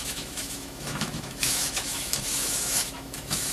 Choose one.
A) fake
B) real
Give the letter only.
A